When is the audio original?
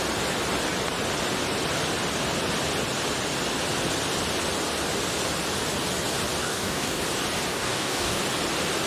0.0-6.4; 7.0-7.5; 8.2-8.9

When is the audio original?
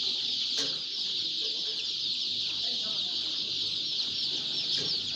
3.2-4.8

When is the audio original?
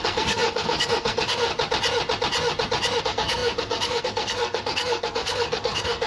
1.5-3.0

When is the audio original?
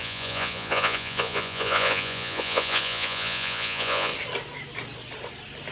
4.1-5.7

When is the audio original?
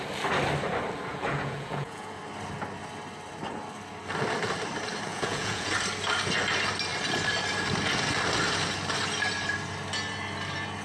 0.0-1.1; 2.2-5.1; 5.7-10.8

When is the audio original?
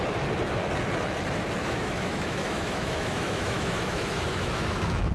0.0-1.6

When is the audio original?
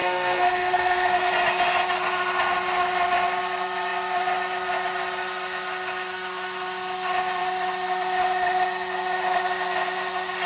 1.3-10.5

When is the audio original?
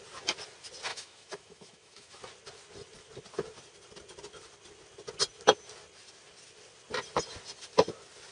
0.0-0.9; 2.2-8.3